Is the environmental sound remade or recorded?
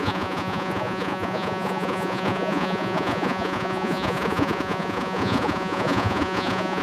remade